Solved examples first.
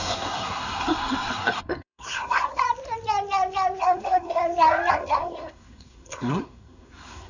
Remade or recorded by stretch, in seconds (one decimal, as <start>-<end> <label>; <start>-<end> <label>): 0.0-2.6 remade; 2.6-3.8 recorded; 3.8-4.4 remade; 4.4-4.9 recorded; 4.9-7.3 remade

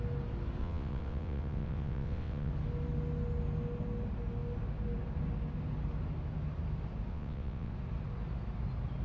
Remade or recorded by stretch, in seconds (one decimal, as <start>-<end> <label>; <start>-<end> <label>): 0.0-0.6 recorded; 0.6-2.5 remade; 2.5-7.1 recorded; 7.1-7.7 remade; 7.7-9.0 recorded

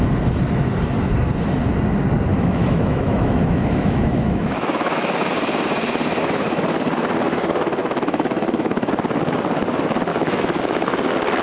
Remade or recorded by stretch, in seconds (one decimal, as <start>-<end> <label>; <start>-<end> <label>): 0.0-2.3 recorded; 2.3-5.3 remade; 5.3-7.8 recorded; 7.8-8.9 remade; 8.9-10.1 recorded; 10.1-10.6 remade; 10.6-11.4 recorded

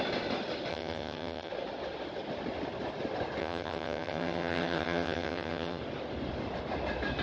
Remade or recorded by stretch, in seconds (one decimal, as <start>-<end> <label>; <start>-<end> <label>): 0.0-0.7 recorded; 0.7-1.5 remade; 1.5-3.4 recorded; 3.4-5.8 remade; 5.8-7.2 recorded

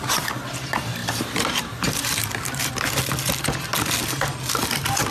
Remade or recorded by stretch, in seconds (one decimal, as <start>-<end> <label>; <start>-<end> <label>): 0.0-1.0 recorded; 1.0-2.9 remade; 2.9-5.1 recorded

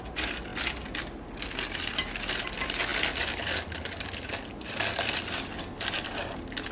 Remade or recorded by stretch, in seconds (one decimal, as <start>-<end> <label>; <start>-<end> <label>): 0.0-6.7 recorded